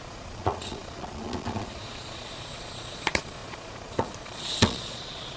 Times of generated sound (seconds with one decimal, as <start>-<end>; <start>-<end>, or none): 0.0-5.4